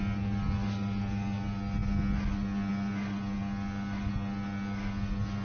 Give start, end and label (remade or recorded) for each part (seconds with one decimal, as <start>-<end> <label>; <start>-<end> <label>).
0.0-5.4 recorded